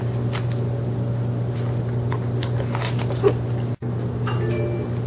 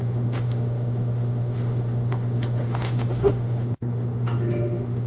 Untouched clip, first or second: first